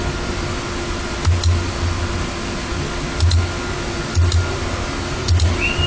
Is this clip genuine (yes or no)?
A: yes